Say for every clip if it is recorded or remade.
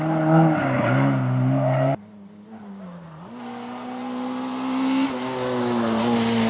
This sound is recorded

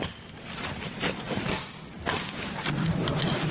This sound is recorded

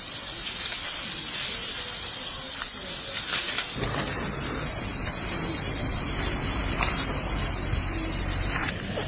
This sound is recorded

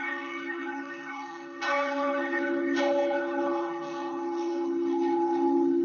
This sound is remade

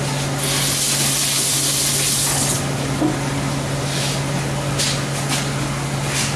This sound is recorded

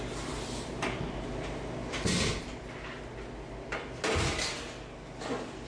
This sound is recorded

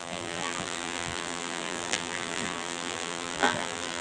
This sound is remade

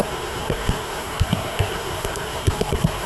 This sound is remade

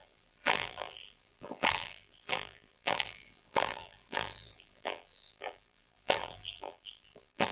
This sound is remade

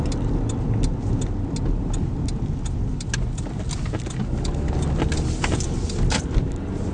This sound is recorded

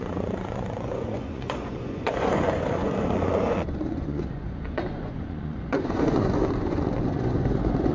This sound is remade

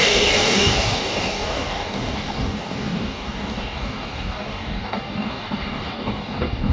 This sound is remade